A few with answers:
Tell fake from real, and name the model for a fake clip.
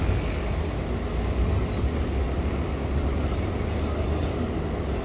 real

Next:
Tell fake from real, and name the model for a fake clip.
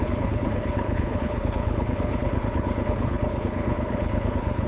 fake, codec, HILCodec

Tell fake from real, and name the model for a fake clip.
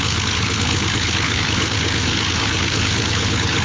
fake, codec, HILCodec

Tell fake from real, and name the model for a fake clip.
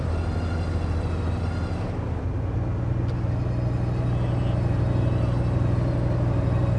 real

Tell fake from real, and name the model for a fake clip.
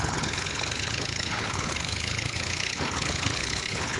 fake, codec, HILCodec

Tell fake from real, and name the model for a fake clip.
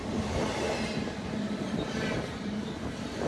real